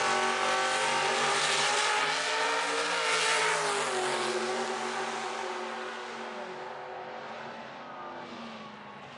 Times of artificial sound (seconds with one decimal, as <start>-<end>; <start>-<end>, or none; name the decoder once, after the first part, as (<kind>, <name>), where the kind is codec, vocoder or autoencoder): none